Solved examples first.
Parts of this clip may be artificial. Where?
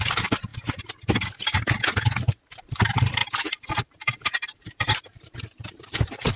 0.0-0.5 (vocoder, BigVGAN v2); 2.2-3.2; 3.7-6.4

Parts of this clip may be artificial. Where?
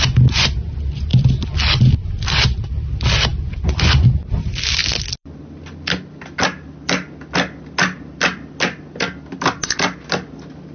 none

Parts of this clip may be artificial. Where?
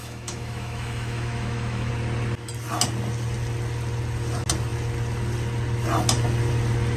0.0-1.9 (autoencoder, DAC-VAE)